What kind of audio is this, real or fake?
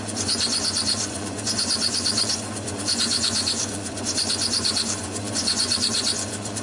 fake